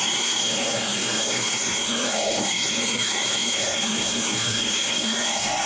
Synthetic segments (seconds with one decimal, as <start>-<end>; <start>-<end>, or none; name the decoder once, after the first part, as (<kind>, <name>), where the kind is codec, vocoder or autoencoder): 0.0-5.7 (codec, SNAC)